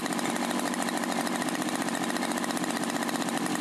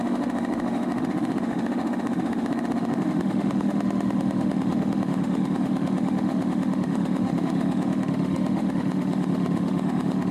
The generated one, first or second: second